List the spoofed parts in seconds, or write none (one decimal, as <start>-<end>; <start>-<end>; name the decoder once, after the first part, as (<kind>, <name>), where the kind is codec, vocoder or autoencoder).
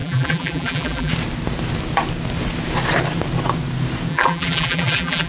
0.0-1.1 (vocoder, BigVGAN v2); 4.1-5.3